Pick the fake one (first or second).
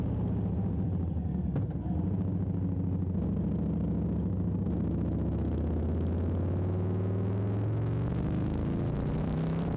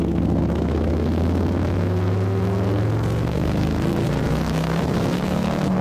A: second